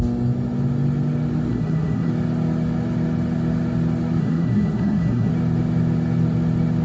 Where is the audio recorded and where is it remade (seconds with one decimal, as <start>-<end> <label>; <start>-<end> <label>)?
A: 0.0-1.5 recorded; 1.5-2.1 remade; 2.1-4.2 recorded; 4.2-5.3 remade; 5.3-6.8 recorded

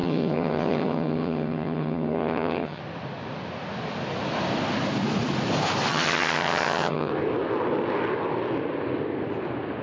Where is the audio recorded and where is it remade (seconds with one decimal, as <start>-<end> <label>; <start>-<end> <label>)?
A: 0.0-2.8 remade; 2.8-5.9 recorded; 5.9-7.1 remade; 7.1-9.8 recorded

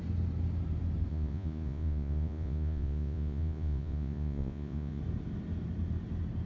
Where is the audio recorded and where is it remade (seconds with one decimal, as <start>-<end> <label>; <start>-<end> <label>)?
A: 0.0-1.1 recorded; 1.1-5.0 remade; 5.0-6.5 recorded